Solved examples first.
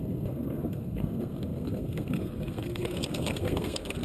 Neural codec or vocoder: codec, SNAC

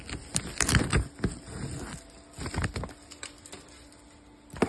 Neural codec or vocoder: none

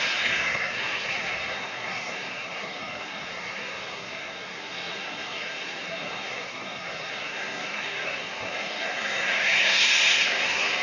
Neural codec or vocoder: codec, SNAC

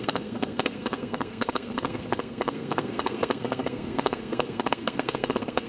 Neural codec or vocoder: codec, SNAC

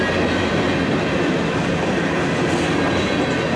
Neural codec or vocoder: none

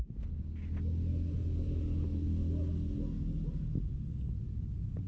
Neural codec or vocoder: none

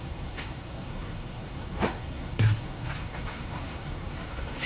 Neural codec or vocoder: codec, SNAC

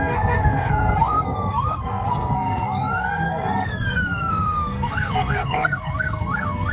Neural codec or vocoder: codec, SNAC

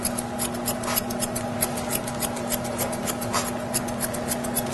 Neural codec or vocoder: none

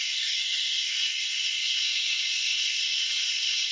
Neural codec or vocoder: codec, SNAC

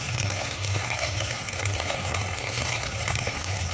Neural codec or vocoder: codec, SNAC